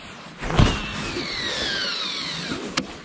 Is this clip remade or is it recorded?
recorded